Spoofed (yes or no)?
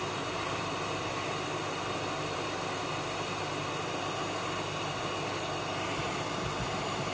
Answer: no